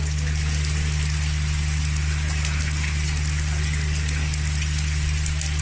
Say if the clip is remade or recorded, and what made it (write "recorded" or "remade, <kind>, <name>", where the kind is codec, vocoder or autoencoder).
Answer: recorded